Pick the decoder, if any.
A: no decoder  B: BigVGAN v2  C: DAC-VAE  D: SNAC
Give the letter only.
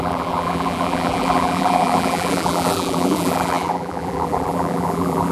B